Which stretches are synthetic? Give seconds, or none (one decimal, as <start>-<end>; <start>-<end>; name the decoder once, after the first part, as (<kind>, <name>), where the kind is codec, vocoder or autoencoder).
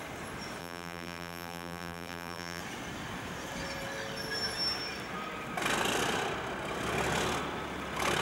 0.6-2.6 (vocoder, BigVGAN v2)